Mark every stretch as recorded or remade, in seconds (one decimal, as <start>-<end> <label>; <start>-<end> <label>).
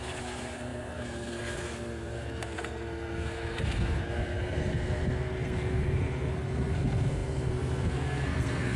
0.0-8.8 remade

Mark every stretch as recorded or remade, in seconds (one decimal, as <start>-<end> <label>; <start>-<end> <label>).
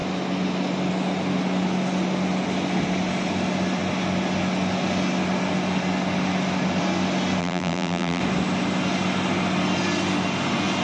0.0-7.4 recorded; 7.4-8.2 remade; 8.2-10.8 recorded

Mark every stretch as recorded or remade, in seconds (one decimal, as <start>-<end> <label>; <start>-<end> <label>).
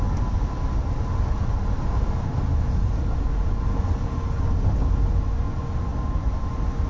0.0-6.9 recorded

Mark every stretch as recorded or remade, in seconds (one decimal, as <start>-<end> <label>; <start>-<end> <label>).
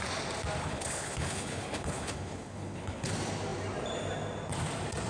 0.0-0.6 recorded; 0.6-3.1 remade; 3.1-5.1 recorded